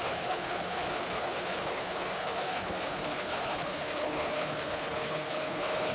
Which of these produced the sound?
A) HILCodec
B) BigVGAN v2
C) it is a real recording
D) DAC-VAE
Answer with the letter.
A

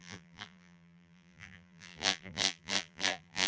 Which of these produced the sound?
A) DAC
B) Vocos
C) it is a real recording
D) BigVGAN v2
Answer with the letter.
D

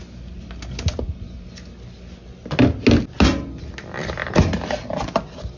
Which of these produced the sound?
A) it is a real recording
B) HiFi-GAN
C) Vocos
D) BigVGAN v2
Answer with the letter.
A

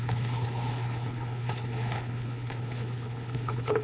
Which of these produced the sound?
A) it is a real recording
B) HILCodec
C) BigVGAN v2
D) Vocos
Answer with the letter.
B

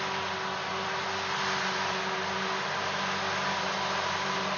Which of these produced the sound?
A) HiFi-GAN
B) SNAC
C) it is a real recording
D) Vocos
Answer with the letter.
C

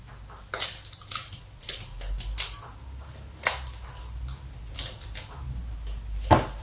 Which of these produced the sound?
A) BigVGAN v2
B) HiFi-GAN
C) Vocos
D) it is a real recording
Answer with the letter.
D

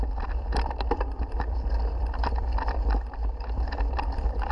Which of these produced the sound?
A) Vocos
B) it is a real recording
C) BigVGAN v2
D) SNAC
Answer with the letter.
B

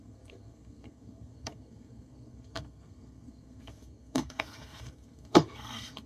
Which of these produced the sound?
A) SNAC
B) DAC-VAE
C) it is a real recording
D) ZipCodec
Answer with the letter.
A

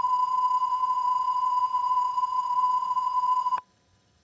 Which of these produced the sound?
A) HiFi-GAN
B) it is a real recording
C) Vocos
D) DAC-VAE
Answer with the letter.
A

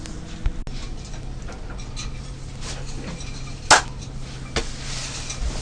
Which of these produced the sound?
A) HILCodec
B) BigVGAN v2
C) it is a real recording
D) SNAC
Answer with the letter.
C